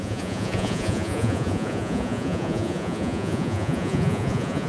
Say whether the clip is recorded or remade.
remade